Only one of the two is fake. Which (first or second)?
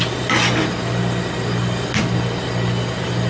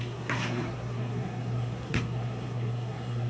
second